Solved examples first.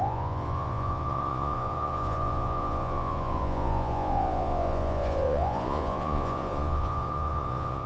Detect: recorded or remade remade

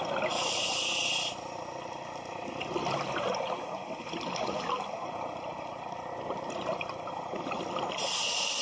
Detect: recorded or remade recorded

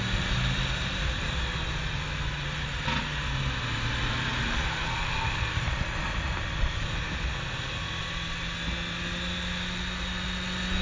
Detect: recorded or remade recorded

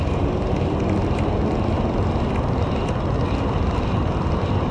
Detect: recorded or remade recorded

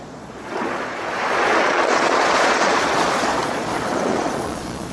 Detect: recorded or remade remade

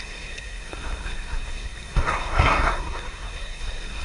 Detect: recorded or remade remade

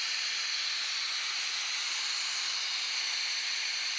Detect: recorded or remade recorded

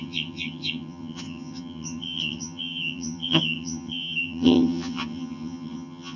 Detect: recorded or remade remade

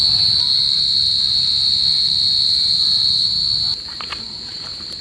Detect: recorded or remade recorded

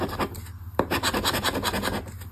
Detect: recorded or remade recorded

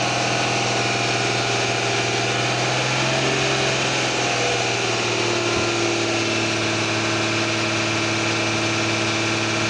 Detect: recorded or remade recorded